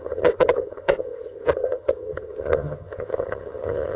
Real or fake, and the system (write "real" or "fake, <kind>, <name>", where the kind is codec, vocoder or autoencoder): fake, vocoder, HiFi-GAN